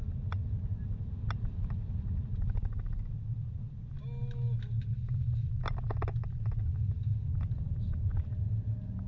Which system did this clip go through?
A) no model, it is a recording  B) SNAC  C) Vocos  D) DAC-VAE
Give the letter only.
A